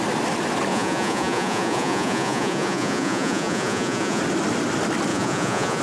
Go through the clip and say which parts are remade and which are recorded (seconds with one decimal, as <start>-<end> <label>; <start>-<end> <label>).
0.0-0.7 recorded; 0.7-4.2 remade; 4.2-5.1 recorded; 5.1-5.8 remade